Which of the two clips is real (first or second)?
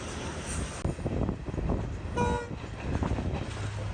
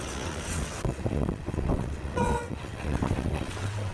first